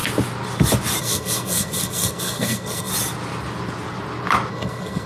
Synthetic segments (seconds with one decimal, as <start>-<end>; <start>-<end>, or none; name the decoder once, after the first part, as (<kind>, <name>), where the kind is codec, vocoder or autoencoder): 1.0-2.9 (codec, SNAC); 4.5-5.1